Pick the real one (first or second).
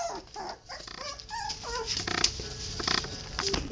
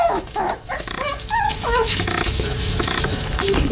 first